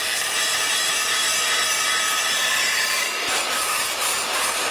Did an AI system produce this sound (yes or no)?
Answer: yes